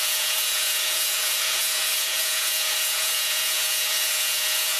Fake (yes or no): yes